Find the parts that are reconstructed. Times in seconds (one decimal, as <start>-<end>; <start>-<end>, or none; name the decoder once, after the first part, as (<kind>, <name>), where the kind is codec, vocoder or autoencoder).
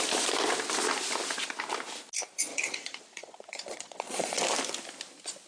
2.5-4.4 (vocoder, Vocos)